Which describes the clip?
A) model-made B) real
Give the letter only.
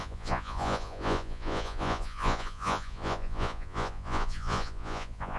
A